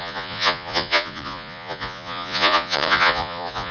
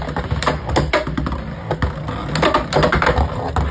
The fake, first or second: first